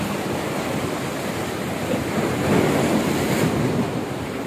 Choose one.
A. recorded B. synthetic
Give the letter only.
A